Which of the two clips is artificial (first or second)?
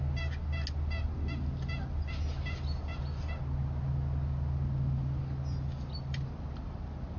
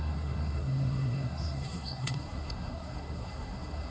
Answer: second